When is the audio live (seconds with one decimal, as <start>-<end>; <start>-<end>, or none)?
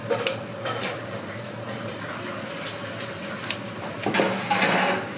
0.0-5.2